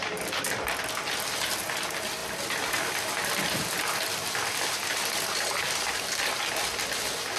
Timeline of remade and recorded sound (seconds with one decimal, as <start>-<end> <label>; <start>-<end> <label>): 0.0-7.4 recorded